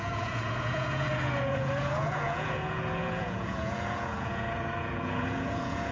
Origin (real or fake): fake